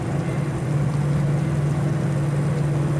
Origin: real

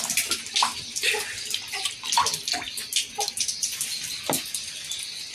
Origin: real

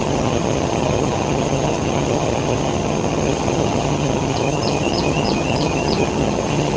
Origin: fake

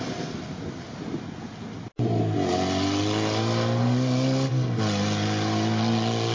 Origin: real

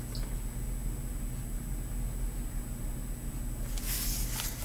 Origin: real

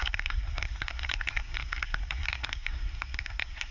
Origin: fake